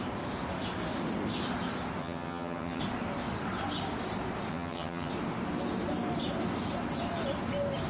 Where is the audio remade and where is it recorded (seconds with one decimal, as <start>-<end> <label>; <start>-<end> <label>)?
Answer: 0.0-2.0 recorded; 2.0-2.8 remade; 2.8-4.5 recorded; 4.5-5.1 remade; 5.1-7.9 recorded

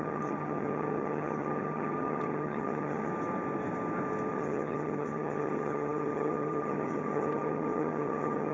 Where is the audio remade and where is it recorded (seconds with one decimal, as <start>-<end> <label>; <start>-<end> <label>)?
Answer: 0.0-3.1 remade; 3.1-4.3 recorded; 4.3-8.5 remade

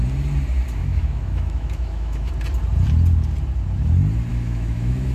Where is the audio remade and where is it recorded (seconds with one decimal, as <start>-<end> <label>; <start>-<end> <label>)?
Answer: 0.0-0.8 recorded; 0.8-2.3 remade; 2.3-4.3 recorded; 4.3-5.1 remade

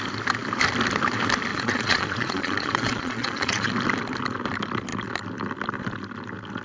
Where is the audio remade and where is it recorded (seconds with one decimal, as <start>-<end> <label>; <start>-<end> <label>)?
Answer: 0.0-1.5 recorded; 1.5-3.7 remade; 3.7-6.6 recorded

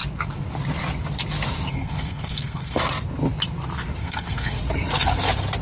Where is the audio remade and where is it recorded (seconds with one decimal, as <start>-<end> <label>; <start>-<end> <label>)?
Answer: 0.0-1.7 recorded; 1.7-2.8 remade; 2.8-4.0 recorded; 4.0-4.6 remade; 4.6-5.6 recorded

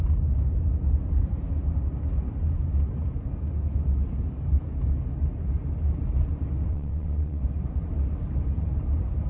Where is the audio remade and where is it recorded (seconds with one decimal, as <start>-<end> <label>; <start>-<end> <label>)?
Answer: 0.0-6.7 recorded; 6.7-7.4 remade; 7.4-9.3 recorded

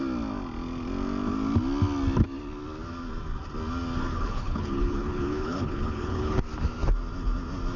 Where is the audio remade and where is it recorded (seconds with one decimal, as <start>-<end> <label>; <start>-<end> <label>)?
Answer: 0.0-4.1 recorded; 4.1-6.4 remade; 6.4-7.8 recorded